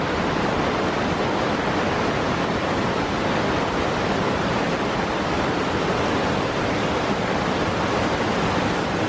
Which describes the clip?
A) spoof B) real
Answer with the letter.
B